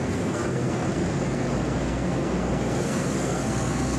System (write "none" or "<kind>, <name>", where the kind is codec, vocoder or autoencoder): codec, SNAC